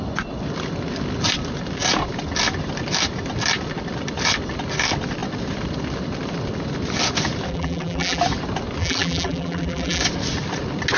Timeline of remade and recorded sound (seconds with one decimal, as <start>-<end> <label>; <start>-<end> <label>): 0.0-7.5 recorded; 7.5-8.2 remade; 8.2-8.8 recorded; 8.8-10.0 remade; 10.0-11.0 recorded